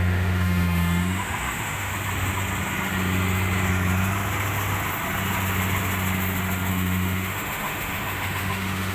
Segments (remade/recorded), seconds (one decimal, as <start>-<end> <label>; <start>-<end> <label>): 0.0-1.9 remade; 1.9-6.7 recorded; 6.7-8.9 remade